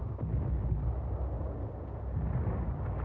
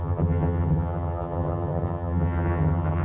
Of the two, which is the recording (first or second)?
first